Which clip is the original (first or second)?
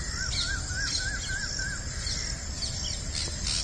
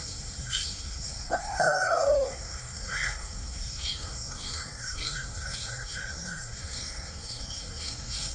first